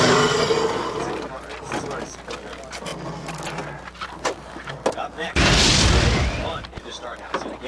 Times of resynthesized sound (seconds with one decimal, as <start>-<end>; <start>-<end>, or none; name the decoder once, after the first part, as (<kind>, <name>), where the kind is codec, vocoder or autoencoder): none